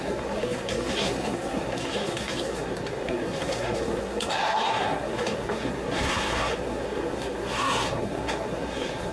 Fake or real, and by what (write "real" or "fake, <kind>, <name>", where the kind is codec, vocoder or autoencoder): fake, codec, SNAC